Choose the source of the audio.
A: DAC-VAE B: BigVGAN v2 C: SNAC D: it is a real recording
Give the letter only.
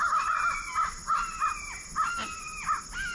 D